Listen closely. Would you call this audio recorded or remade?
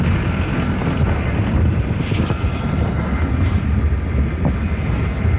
recorded